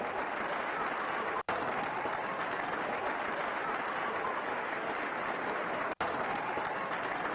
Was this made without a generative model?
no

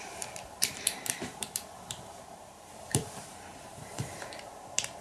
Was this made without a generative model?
no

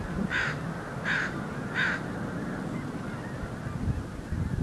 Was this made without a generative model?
yes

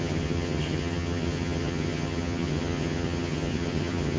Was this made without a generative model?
no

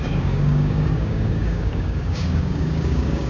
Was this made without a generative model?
no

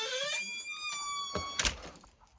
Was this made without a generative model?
yes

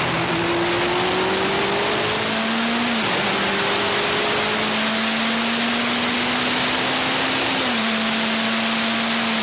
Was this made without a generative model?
yes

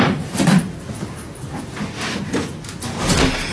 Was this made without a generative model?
yes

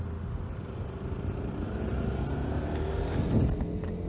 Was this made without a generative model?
yes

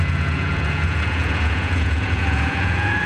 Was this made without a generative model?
no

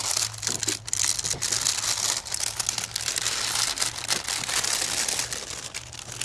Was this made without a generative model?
yes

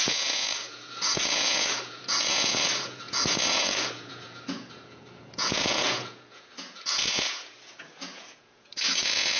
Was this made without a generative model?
no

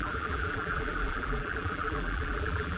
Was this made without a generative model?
no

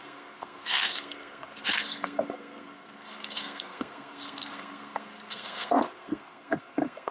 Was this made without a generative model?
no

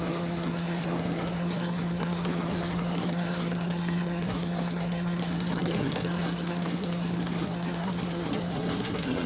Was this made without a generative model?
no